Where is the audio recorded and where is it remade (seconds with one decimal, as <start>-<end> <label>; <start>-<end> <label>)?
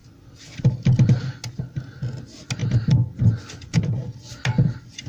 0.0-5.1 recorded